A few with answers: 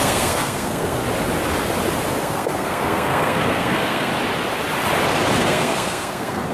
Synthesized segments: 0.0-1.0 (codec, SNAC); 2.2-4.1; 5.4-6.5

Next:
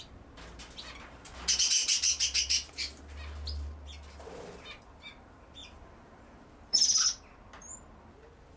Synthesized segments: 1.8-3.0 (vocoder, BigVGAN v2); 5.6-7.0

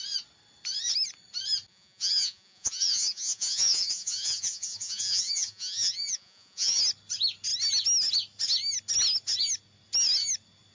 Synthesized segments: 1.7-6.8 (vocoder, Vocos)